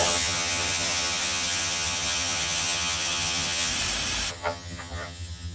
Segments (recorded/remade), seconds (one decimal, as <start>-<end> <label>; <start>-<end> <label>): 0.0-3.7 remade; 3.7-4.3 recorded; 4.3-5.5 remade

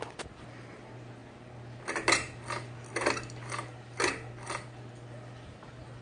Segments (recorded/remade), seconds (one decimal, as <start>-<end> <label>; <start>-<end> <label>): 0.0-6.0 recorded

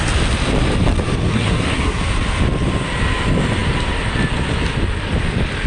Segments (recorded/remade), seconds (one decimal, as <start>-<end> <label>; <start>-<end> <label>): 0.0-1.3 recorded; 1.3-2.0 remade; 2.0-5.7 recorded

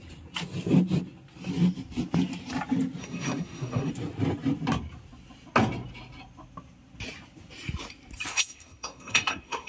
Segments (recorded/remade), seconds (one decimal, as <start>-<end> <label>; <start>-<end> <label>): 0.0-3.0 recorded; 3.0-3.9 remade; 3.9-8.3 recorded; 8.3-9.7 remade

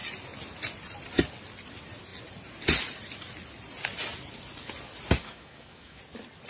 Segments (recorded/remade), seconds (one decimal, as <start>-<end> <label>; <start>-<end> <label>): 0.0-5.2 recorded; 5.2-6.0 remade; 6.0-6.5 recorded

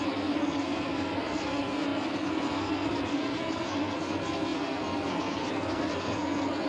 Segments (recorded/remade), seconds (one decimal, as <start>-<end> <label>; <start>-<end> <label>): 0.0-6.7 remade